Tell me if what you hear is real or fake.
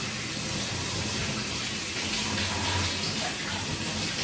real